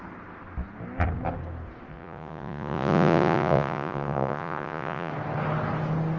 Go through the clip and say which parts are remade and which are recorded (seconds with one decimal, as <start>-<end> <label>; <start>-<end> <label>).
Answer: 0.0-1.9 recorded; 1.9-5.1 remade; 5.1-6.2 recorded